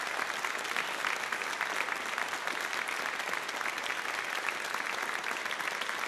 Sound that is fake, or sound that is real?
real